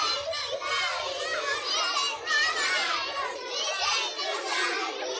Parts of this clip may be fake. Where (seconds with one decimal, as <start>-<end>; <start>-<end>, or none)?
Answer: 0.0-3.9; 4.4-5.2